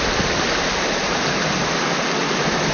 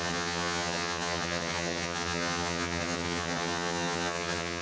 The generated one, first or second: second